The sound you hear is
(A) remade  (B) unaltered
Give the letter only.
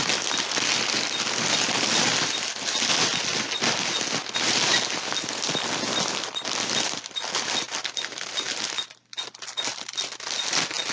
B